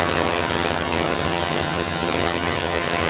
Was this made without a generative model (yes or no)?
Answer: no